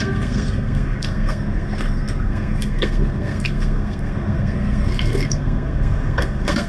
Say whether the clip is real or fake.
fake